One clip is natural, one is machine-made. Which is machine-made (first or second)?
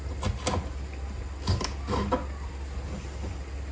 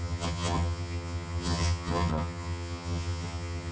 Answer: second